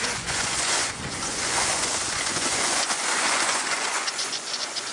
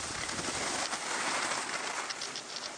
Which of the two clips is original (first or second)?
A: second